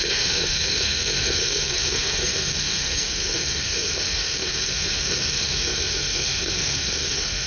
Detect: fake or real fake